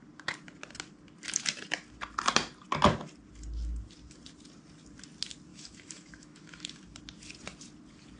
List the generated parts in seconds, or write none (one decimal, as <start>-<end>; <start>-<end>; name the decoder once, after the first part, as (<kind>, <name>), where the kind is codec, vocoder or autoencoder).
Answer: 5.5-7.0 (autoencoder, DAC-VAE)